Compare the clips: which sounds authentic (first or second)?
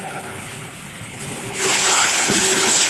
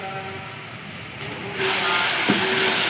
second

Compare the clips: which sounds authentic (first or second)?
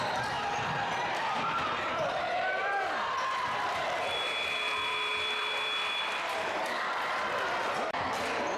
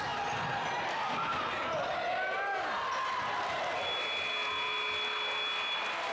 second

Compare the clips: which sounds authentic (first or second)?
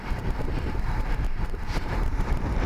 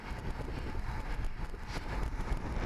second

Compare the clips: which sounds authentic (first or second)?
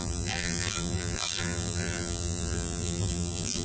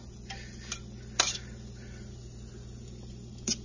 second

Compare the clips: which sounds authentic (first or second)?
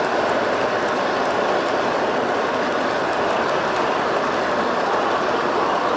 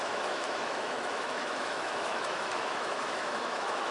first